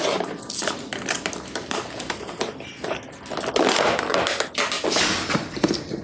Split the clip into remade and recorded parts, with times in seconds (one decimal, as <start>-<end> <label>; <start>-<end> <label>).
0.0-0.9 recorded; 0.9-1.8 remade; 1.8-6.0 recorded